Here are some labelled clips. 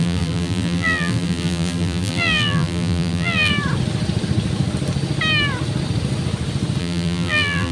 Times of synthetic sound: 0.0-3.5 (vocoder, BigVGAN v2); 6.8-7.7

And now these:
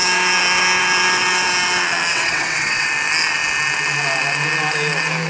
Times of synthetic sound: 2.1-2.9 (vocoder, WaveNeXt)

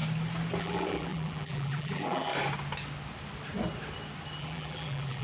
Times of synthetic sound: 0.6-2.3 (vocoder, BigVGAN v2); 4.4-5.2

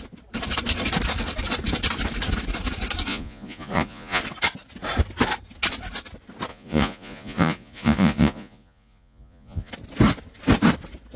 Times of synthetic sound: 3.1-4.2 (vocoder, Vocos); 6.5-9.7

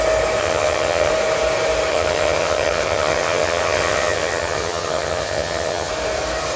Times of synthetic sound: 0.4-1.1 (vocoder, HiFi-GAN); 1.9-5.9

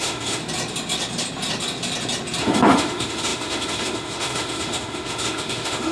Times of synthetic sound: 0.0-0.4 (autoencoder, DAC-VAE); 2.4-5.9

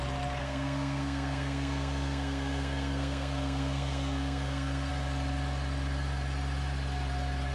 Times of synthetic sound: 0.4-4.9 (codec, SNAC)

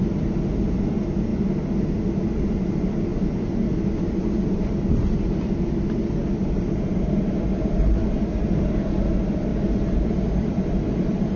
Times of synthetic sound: none